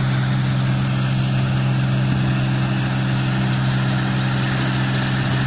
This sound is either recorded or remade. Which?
recorded